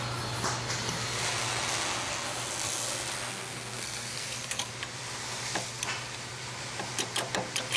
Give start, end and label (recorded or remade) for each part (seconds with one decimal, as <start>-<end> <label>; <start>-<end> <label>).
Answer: 0.0-3.3 recorded; 3.3-4.7 remade; 4.7-7.8 recorded